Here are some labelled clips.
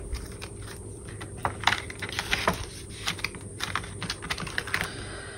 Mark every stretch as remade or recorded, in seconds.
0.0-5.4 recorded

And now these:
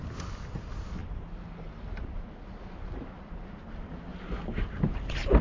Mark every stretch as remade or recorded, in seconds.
0.0-5.4 recorded

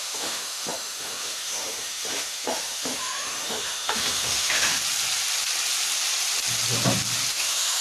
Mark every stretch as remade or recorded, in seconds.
0.0-4.7 remade; 4.7-7.3 recorded; 7.3-7.8 remade